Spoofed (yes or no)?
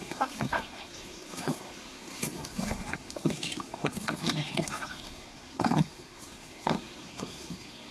yes